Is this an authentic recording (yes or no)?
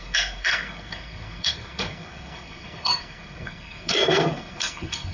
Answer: no